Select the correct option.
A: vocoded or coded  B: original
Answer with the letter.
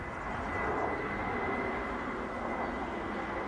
B